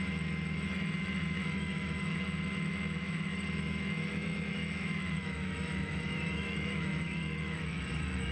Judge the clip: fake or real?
fake